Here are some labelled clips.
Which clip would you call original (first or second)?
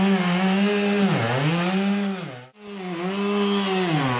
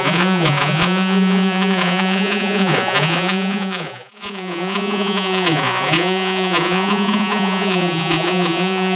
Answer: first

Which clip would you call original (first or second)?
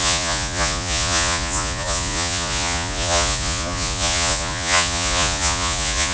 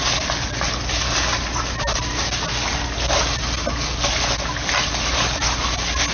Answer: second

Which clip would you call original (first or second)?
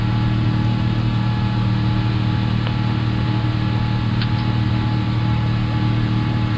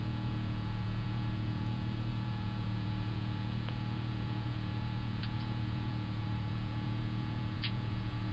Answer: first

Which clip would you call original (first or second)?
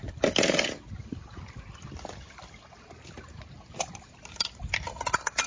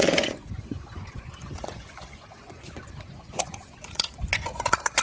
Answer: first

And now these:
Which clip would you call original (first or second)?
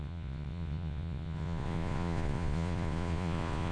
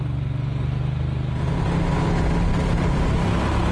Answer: second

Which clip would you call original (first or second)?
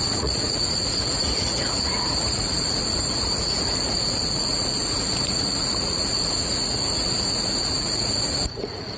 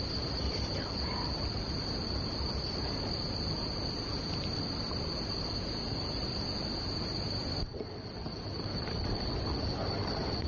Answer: second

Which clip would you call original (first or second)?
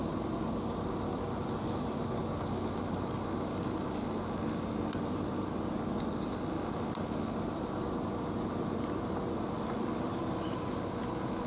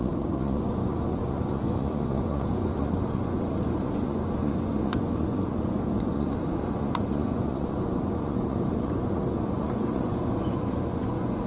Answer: first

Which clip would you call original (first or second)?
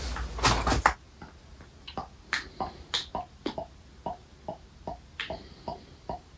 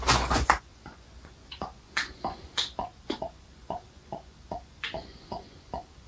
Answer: first